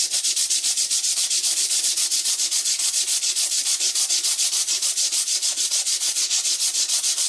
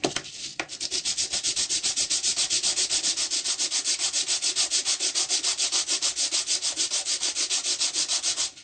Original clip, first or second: second